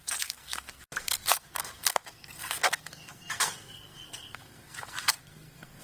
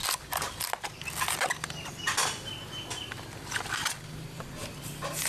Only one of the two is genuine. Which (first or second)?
second